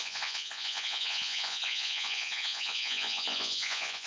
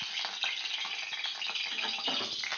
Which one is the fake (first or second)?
first